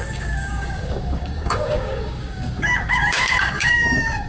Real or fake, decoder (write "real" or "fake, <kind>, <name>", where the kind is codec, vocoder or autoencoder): fake, codec, DAC